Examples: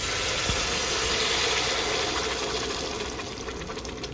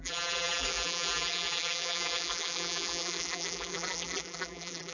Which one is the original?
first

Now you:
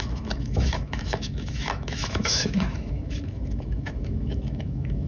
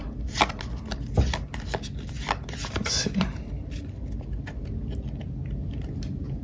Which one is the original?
second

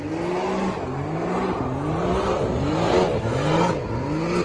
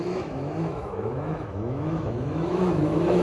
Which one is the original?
first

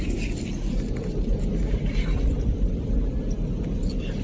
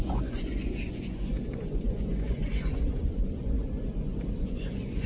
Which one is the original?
first